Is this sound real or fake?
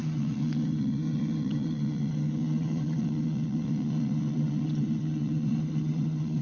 fake